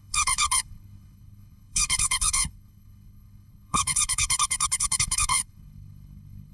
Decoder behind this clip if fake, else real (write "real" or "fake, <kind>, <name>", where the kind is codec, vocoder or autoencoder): fake, codec, HILCodec